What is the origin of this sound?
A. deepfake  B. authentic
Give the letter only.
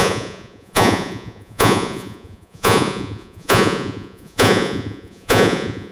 A